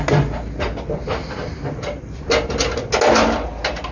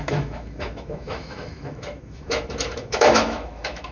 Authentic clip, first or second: first